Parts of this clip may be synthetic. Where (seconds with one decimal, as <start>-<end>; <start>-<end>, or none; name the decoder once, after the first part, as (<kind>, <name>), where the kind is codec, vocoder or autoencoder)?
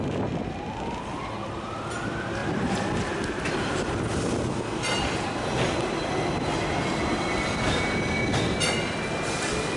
none